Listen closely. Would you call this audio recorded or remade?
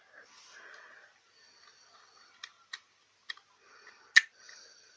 recorded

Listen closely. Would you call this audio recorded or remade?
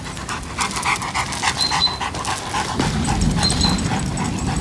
recorded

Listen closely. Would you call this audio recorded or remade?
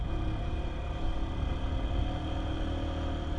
recorded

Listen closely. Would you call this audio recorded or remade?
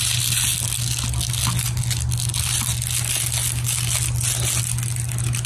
recorded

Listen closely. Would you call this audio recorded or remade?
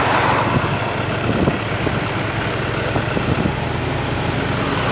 recorded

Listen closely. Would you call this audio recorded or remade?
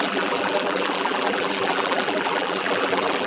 remade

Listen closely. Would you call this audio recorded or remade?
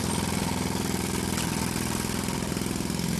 remade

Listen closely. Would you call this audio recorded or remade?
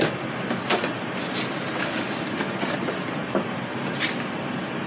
recorded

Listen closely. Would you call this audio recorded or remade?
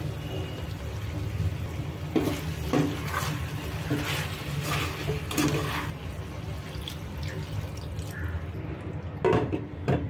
recorded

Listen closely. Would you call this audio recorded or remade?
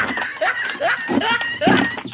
recorded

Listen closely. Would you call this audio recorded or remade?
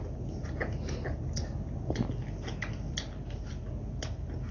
recorded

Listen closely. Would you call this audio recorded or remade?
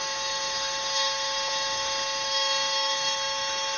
remade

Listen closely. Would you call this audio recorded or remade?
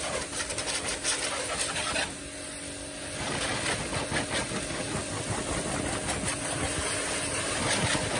recorded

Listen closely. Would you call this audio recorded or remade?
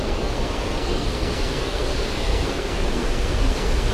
remade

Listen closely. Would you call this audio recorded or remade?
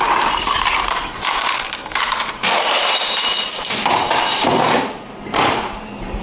remade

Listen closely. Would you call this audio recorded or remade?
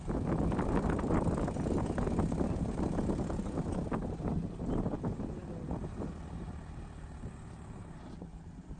recorded